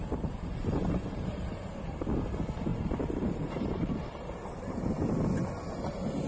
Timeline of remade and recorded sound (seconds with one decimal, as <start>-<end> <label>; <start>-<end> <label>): 0.0-1.6 remade; 1.6-2.7 recorded; 2.7-5.1 remade; 5.1-6.3 recorded